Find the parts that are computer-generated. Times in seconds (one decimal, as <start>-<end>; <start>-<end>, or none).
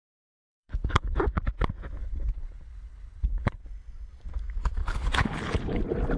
0.5-1.2; 2.0-3.6; 4.8-5.8